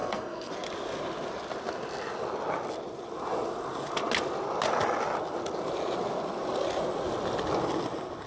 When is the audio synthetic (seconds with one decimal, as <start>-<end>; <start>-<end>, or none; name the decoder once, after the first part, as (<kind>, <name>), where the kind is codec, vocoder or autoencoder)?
0.0-0.5 (codec, SNAC)